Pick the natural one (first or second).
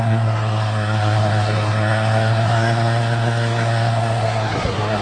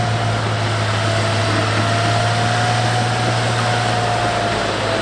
second